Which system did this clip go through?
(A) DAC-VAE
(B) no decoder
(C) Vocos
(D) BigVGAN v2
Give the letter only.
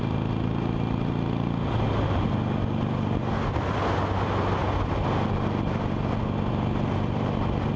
B